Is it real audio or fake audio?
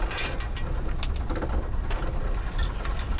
real